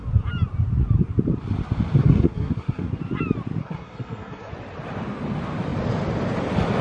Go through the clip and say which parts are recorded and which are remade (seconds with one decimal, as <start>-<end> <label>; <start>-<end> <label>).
0.0-2.0 recorded; 2.0-3.0 remade; 3.0-3.6 recorded; 3.6-4.5 remade; 4.5-6.8 recorded